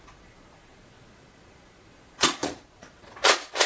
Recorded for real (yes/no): no